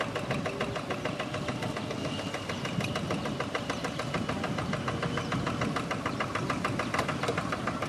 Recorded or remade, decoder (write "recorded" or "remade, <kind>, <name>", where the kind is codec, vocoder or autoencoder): recorded